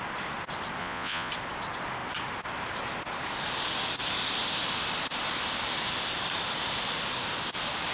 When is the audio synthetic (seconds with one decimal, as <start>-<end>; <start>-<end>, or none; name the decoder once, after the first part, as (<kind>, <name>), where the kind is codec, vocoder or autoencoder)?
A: 0.8-1.3 (vocoder, Vocos)